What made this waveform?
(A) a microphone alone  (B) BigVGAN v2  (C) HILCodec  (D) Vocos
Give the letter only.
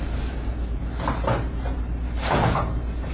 B